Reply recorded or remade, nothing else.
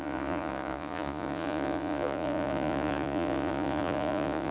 remade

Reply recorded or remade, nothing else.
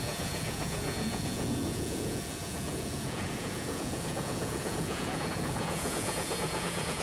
remade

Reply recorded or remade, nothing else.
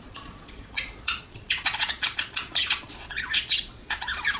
remade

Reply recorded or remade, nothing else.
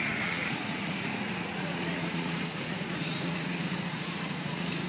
remade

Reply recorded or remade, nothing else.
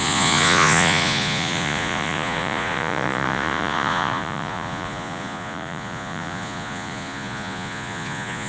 remade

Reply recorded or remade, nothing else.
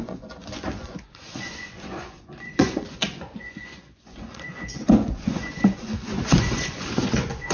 remade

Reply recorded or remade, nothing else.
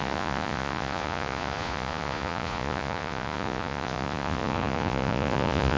remade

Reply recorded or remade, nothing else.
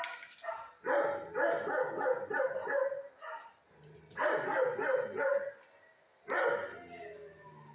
recorded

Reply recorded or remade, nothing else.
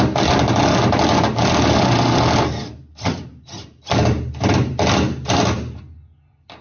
recorded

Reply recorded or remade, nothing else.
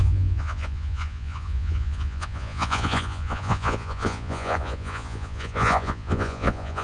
remade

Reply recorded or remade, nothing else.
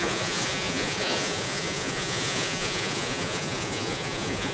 remade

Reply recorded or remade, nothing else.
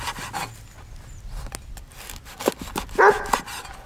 recorded